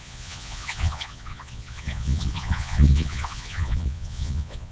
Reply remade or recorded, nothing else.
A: remade